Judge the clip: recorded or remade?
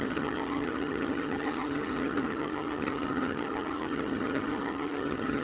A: remade